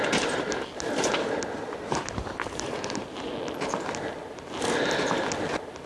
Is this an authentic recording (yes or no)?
yes